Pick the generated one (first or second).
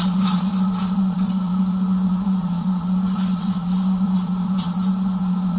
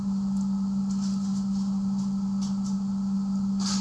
first